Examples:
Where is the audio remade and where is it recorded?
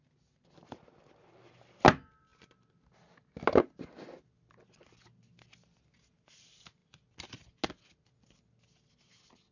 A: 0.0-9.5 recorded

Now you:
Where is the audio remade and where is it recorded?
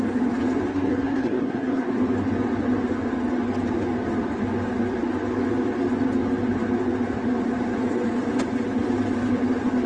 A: 0.0-0.7 recorded; 0.7-1.9 remade; 1.9-9.9 recorded